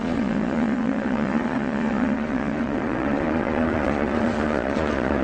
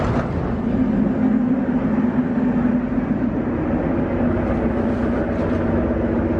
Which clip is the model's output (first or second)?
first